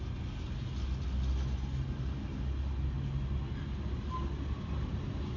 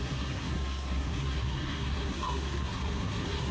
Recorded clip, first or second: first